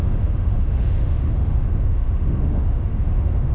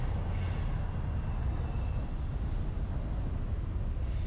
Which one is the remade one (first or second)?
first